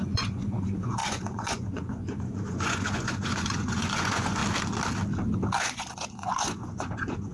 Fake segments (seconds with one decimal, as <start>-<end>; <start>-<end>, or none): 0.0-4.4; 5.6-7.3